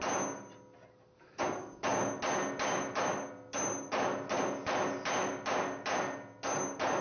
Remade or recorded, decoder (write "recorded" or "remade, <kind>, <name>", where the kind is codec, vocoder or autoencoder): recorded